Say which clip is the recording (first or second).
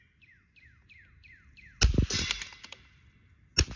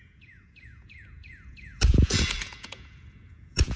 first